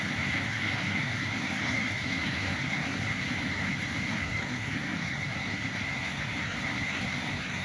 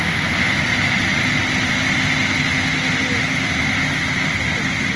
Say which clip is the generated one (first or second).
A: first